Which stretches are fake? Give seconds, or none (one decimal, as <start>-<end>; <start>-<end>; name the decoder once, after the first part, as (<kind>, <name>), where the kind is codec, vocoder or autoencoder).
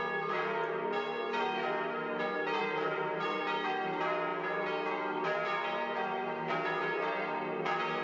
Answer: 2.6-3.4 (vocoder, BigVGAN v2)